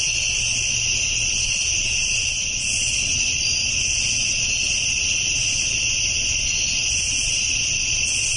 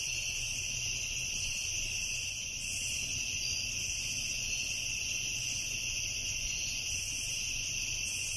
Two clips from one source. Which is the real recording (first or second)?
first